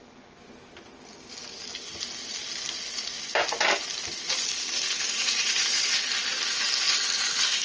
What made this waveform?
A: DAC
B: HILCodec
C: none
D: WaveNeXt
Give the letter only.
C